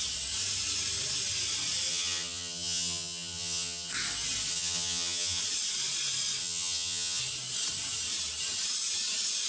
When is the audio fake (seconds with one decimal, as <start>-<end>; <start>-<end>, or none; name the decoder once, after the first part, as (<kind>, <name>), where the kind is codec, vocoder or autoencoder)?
1.9-3.9 (vocoder, HiFi-GAN); 4.5-5.4; 6.4-7.2